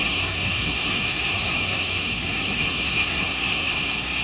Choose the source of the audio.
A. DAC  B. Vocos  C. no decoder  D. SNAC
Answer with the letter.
D